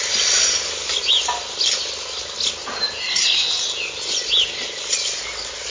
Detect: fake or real real